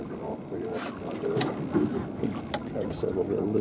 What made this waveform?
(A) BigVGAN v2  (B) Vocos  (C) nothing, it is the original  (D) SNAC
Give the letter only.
C